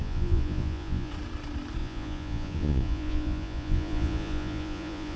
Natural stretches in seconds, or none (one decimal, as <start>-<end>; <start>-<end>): 1.1-1.8